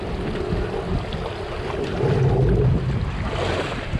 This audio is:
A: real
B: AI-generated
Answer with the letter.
A